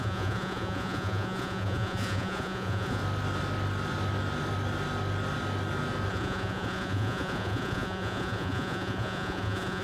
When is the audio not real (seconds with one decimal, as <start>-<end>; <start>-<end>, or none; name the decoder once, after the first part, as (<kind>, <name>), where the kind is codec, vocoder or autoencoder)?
0.0-3.0 (vocoder, Vocos); 6.1-9.8